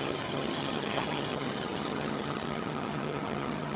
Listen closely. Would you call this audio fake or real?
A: fake